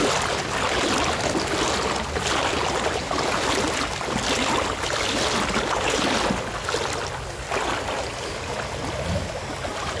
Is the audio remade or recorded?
recorded